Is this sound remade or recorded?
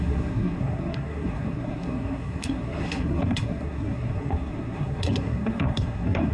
remade